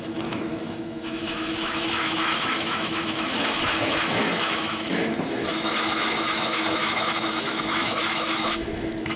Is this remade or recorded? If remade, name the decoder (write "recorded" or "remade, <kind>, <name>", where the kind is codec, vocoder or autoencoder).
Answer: remade, autoencoder, DAC-VAE